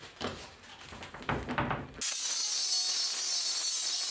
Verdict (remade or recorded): recorded